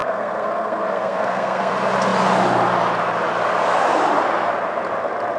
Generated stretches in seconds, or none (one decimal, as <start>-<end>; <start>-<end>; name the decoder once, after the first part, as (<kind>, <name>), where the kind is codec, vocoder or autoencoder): 0.0-1.7 (codec, SNAC)